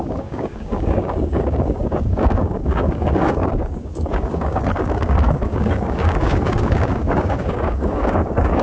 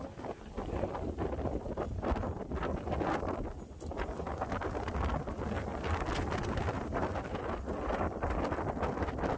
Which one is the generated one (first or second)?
first